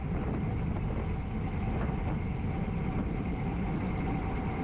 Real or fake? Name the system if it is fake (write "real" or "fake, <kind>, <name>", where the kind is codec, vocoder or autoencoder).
real